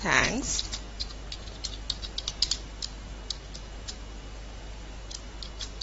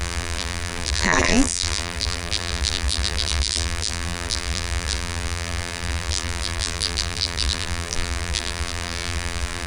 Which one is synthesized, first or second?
second